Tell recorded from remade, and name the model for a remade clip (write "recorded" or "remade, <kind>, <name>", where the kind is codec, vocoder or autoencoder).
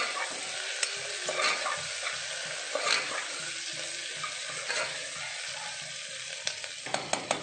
recorded